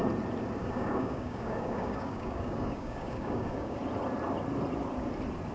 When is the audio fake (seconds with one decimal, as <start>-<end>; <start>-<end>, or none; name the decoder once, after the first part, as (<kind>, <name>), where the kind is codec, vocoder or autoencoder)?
0.6-3.8 (codec, DAC)